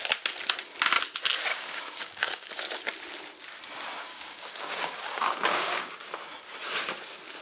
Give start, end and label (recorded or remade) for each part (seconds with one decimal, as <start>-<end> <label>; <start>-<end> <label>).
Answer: 0.0-1.5 recorded; 1.5-2.5 remade; 2.5-4.1 recorded; 4.1-5.9 remade; 5.9-7.4 recorded

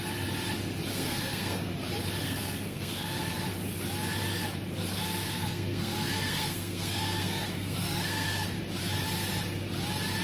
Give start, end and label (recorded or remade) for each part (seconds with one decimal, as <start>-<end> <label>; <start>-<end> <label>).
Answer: 0.0-0.9 recorded; 0.9-1.7 remade; 1.7-2.2 recorded; 2.2-3.3 remade; 3.3-4.9 recorded; 4.9-8.6 remade; 8.6-10.2 recorded

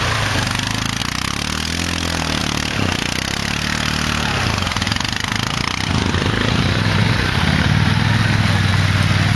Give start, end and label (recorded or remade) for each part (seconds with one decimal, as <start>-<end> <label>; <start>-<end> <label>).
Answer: 0.0-9.3 recorded

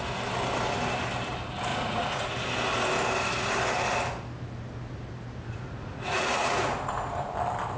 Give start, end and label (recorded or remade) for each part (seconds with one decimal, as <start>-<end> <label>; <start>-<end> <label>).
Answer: 0.0-1.7 recorded; 1.7-2.3 remade; 2.3-5.5 recorded; 5.5-7.3 remade; 7.3-7.8 recorded

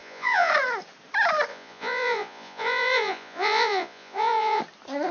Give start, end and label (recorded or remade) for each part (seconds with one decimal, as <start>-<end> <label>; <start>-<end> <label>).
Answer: 0.0-0.5 remade; 0.5-1.5 recorded; 1.5-4.6 remade; 4.6-5.1 recorded

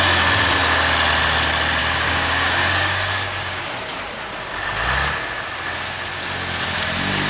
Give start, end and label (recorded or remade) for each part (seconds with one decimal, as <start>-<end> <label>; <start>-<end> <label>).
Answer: 0.0-1.8 recorded; 1.8-3.6 remade; 3.6-7.3 recorded

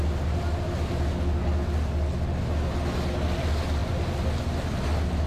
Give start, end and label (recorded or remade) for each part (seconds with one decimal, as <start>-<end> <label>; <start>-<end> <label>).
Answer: 0.0-5.3 recorded

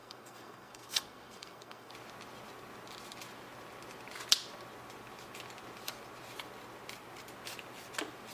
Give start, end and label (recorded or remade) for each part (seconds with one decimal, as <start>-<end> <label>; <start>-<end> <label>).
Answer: 0.0-1.9 remade; 1.9-8.3 recorded